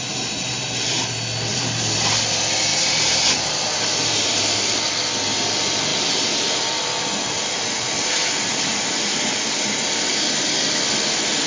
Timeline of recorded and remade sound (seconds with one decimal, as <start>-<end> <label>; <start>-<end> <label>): 0.0-1.5 recorded; 1.5-2.1 remade; 2.1-2.7 recorded; 2.7-4.4 remade; 4.4-5.9 recorded; 5.9-6.9 remade; 6.9-8.0 recorded; 8.0-10.1 remade; 10.1-11.5 recorded